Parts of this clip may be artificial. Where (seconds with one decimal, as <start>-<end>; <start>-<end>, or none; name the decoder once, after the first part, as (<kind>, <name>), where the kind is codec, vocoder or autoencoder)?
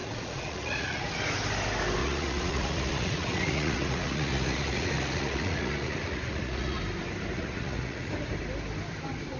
0.0-1.1 (vocoder, Vocos); 2.0-6.8; 7.3-8.1